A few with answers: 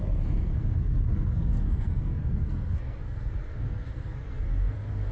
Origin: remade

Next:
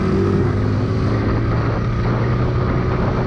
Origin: recorded